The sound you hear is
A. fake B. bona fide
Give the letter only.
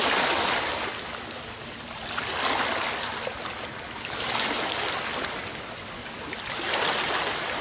B